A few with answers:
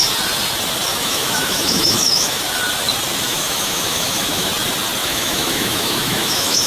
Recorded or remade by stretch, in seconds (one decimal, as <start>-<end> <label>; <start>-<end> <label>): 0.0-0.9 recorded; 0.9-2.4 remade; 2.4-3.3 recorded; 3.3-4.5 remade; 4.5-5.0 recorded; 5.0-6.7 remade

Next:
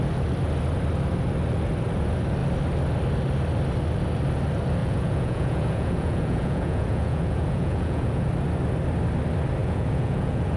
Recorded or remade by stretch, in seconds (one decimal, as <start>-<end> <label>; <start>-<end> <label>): 0.0-4.8 recorded; 4.8-8.3 remade; 8.3-9.6 recorded; 9.6-10.6 remade

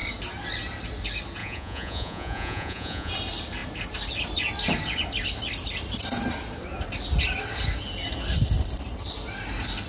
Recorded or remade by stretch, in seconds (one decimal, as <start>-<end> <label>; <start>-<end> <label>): 0.0-1.4 recorded; 1.4-3.1 remade; 3.1-9.9 recorded

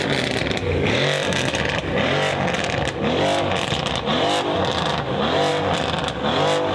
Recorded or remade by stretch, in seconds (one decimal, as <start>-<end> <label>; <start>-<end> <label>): 0.0-6.7 recorded

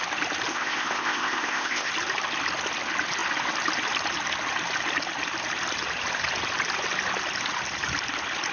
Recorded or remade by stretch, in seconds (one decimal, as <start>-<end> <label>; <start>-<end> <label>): 0.0-0.5 recorded; 0.5-1.9 remade; 1.9-8.5 recorded

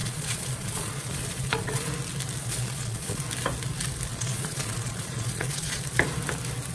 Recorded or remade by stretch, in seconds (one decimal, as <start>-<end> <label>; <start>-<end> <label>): 0.0-1.9 remade; 1.9-2.4 recorded; 2.4-3.2 remade; 3.2-4.1 recorded; 4.1-5.8 remade; 5.8-6.7 recorded